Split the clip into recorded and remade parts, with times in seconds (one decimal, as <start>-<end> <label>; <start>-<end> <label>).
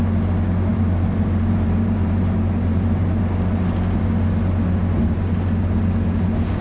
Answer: 0.0-0.7 recorded; 0.7-3.2 remade; 3.2-6.6 recorded